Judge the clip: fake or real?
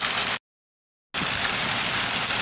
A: real